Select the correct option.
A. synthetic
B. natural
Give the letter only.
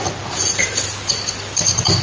B